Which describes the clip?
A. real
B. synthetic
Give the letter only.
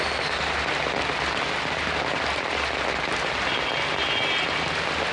A